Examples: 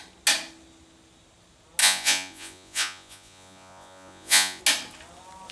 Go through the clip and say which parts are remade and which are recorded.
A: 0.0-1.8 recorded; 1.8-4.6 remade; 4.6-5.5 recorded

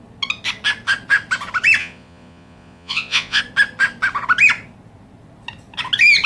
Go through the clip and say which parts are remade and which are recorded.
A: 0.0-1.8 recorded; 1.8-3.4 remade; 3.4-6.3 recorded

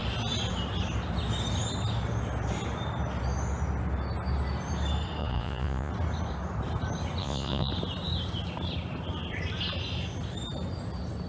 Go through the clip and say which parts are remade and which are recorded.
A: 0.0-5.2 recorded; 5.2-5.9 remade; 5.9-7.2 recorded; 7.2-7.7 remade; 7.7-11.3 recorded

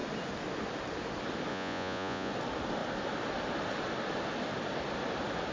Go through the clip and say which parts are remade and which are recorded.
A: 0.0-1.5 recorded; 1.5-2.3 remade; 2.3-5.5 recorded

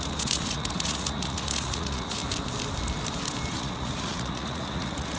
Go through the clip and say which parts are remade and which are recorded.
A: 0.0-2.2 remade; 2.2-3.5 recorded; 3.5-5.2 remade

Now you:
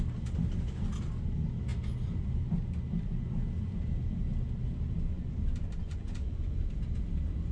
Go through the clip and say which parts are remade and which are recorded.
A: 0.0-5.8 recorded; 5.8-6.6 remade; 6.6-7.5 recorded